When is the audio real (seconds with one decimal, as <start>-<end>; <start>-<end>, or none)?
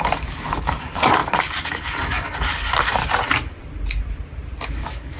3.0-4.7